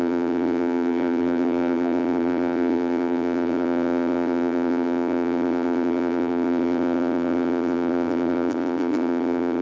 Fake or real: fake